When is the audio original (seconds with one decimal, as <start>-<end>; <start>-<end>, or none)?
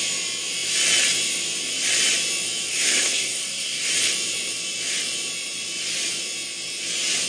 0.0-2.7; 3.9-7.3